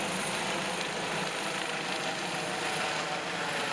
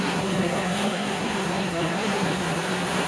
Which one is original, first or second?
first